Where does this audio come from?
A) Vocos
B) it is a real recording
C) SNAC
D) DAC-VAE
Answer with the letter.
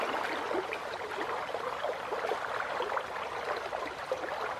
B